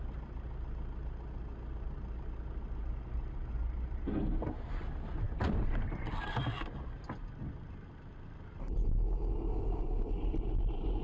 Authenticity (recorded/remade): recorded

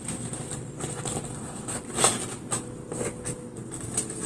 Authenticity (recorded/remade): remade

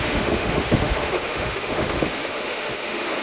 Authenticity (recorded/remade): remade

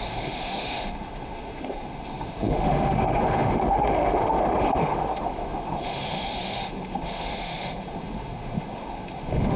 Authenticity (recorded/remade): remade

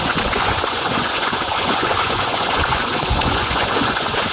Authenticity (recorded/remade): remade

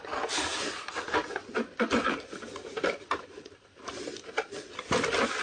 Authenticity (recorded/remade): recorded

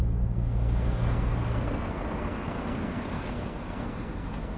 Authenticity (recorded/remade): remade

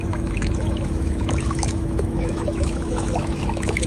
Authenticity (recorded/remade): remade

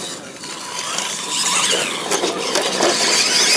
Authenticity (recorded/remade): recorded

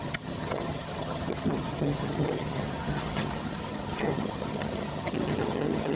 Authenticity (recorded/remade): remade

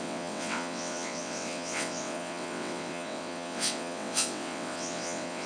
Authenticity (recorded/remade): remade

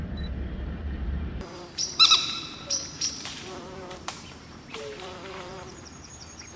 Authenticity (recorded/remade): remade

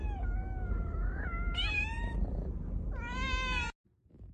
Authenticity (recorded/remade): recorded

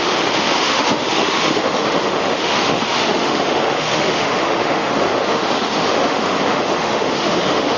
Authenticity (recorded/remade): remade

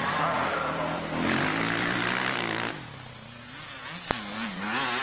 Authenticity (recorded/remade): recorded